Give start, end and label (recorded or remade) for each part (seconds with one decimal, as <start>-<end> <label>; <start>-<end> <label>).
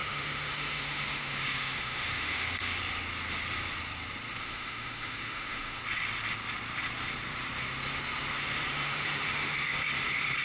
0.0-2.8 remade; 2.8-4.4 recorded; 4.4-5.8 remade; 5.8-8.7 recorded; 8.7-9.7 remade; 9.7-10.4 recorded